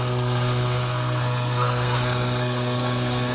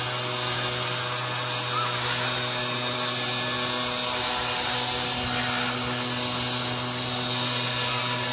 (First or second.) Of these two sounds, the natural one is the second